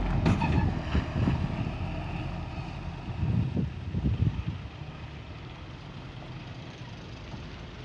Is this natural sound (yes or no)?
yes